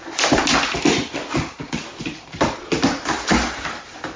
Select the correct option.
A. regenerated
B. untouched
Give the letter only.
A